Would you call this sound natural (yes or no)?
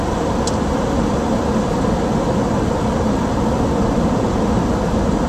yes